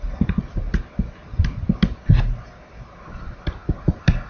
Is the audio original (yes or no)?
yes